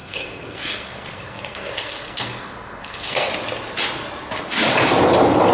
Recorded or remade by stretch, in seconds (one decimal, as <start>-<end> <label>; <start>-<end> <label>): 0.0-3.3 remade; 3.3-5.5 recorded